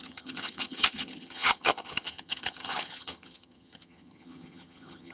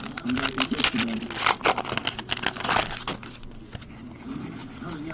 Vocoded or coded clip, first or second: first